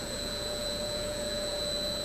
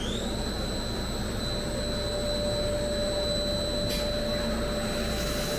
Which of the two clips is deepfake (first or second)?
first